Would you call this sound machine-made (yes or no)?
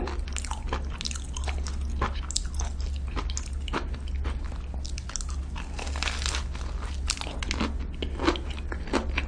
no